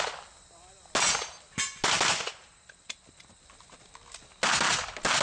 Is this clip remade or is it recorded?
recorded